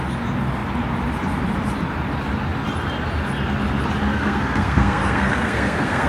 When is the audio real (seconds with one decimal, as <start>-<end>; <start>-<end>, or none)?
0.0-4.1